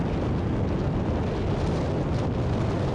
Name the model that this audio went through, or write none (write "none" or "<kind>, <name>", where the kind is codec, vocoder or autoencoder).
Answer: none